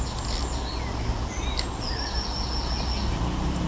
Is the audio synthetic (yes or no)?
no